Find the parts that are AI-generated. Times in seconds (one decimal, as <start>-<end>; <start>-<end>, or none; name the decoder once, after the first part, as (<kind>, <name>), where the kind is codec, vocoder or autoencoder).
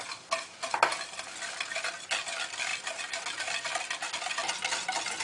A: none